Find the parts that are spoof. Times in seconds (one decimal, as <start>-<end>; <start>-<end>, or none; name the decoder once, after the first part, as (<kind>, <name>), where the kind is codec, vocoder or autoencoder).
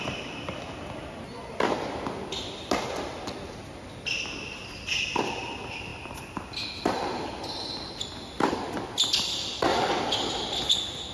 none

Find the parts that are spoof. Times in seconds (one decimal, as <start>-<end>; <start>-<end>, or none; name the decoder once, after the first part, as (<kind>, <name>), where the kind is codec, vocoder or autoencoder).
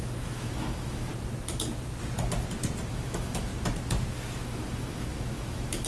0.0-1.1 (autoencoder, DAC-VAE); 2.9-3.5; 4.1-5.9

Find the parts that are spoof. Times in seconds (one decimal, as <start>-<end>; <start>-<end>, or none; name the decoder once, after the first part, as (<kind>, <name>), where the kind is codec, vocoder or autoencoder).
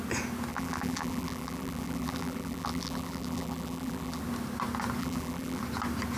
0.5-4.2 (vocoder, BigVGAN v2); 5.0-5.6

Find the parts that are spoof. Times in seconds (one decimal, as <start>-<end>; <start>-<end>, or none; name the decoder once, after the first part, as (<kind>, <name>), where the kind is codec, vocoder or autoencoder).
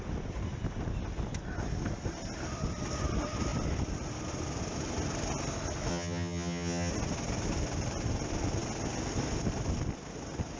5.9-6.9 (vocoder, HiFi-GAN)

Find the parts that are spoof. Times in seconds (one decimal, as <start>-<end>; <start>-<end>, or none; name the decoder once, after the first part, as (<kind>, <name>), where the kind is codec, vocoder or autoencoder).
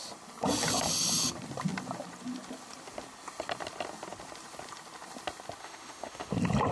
5.6-6.3 (autoencoder, DAC-VAE)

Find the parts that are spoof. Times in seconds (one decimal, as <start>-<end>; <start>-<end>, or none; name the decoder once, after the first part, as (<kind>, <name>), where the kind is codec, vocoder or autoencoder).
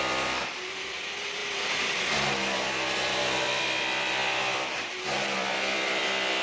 0.0-6.4 (vocoder, BigVGAN v2)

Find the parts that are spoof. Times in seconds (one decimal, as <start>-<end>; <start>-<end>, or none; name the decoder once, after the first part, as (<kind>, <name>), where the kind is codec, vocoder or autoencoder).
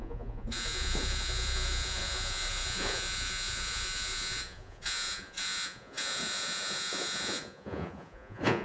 0.0-8.6 (vocoder, Vocos)